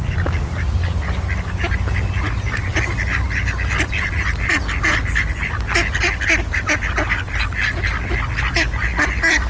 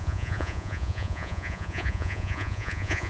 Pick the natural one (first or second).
first